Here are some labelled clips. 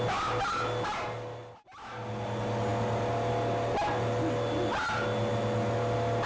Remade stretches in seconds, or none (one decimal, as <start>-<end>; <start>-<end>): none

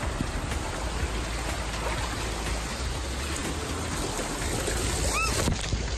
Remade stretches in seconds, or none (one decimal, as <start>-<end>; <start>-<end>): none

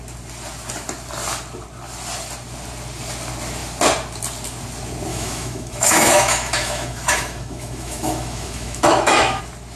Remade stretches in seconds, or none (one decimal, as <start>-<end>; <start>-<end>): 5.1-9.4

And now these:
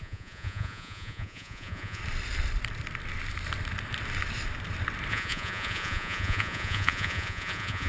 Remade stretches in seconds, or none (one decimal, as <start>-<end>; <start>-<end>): 0.0-2.0; 5.1-7.9